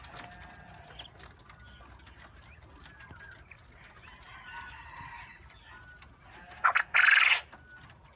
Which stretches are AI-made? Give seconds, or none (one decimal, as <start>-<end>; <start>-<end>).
none